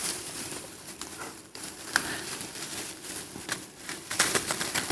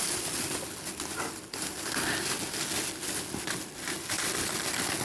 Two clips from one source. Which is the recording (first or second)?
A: second